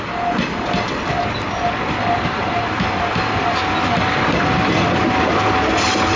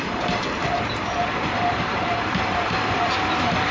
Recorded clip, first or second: first